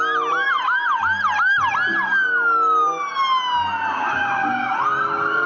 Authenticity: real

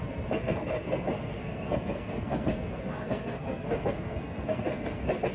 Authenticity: fake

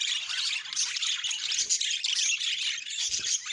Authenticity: real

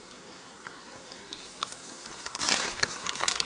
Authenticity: fake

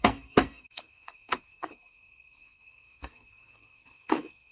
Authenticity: fake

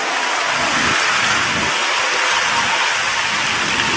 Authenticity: real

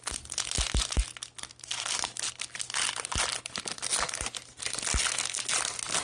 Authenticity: real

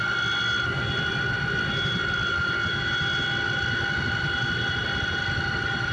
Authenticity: real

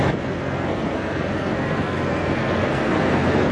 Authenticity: fake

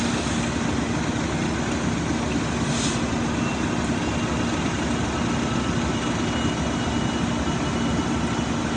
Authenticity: real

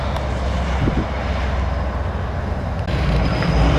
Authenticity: real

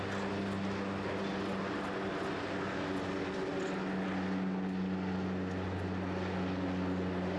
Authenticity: real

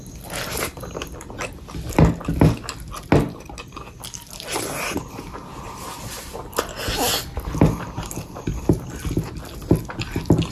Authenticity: real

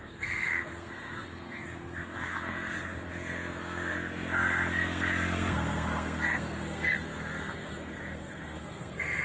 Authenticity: fake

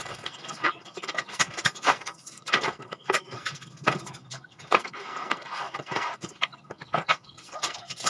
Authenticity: fake